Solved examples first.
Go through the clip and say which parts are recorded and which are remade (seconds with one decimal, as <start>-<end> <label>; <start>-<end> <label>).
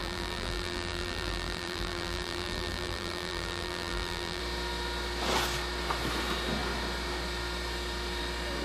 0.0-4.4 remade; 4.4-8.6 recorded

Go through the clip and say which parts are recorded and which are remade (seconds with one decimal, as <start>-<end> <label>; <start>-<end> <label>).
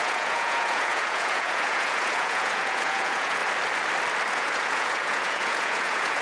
0.0-3.4 remade; 3.4-4.3 recorded; 4.3-6.2 remade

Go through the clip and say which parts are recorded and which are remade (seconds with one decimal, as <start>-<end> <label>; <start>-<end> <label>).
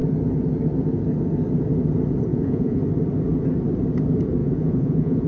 0.0-2.3 recorded; 2.3-2.8 remade; 2.8-4.4 recorded; 4.4-5.3 remade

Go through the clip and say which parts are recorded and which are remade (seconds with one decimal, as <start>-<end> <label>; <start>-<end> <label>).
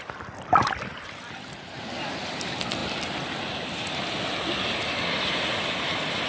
0.0-6.3 recorded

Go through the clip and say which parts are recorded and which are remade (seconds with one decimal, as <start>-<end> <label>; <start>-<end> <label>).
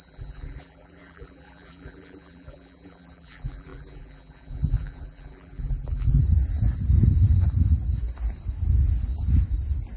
0.0-6.2 remade; 6.2-10.0 recorded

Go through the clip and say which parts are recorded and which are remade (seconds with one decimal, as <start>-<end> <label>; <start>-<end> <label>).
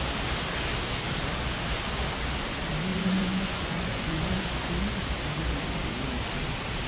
0.0-2.9 recorded; 2.9-4.7 remade; 4.7-6.9 recorded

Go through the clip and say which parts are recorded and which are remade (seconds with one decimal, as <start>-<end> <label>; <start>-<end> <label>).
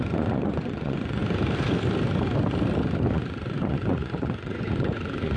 0.0-1.2 remade; 1.2-3.1 recorded; 3.1-5.4 remade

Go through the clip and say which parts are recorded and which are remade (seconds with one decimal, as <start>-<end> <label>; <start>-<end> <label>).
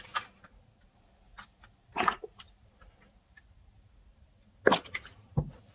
0.0-1.9 recorded; 1.9-2.4 remade; 2.4-5.7 recorded